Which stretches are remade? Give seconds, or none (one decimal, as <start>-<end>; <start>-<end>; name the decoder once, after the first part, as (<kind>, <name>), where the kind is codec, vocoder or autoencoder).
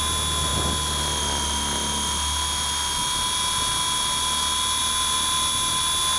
none